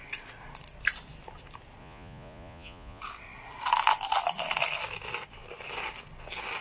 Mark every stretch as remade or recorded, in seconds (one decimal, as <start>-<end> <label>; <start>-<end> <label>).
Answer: 0.0-1.8 recorded; 1.8-3.0 remade; 3.0-6.6 recorded